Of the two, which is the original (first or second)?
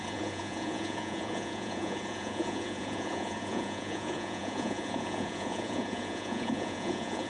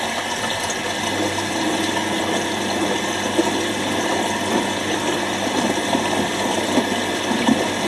second